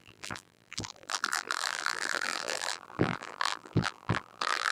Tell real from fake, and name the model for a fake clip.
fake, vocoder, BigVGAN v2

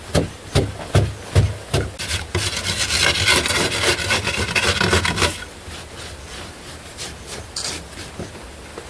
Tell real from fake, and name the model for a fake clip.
real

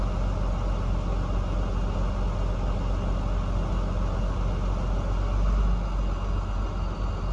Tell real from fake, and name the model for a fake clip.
real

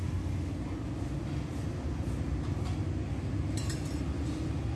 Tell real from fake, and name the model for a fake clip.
real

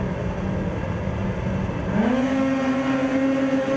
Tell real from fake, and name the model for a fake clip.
real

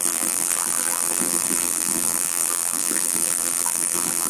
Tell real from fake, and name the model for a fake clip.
fake, vocoder, BigVGAN v2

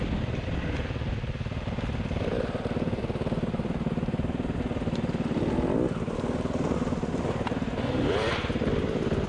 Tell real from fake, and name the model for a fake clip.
fake, vocoder, BigVGAN v2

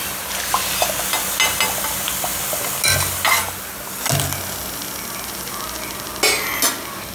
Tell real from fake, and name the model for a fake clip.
real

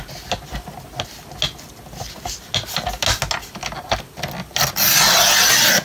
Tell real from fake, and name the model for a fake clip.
real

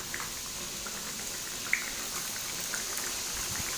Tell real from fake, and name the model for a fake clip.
fake, vocoder, BigVGAN v2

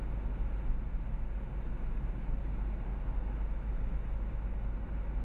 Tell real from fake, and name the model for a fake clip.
real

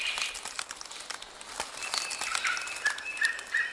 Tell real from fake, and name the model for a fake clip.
real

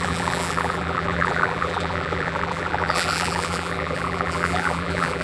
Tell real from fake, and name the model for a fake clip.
fake, vocoder, BigVGAN v2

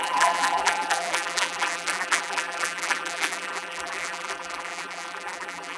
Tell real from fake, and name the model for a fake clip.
fake, vocoder, BigVGAN v2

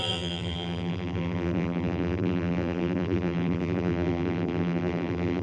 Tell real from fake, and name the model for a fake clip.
fake, vocoder, BigVGAN v2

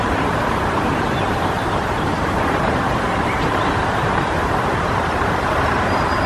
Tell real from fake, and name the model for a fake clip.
fake, vocoder, BigVGAN v2